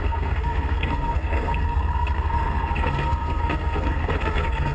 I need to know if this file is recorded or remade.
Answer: remade